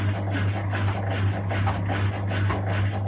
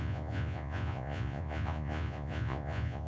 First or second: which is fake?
second